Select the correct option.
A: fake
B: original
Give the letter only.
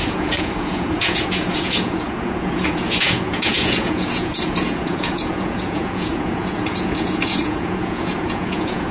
A